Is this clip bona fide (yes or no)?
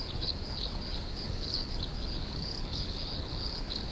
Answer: no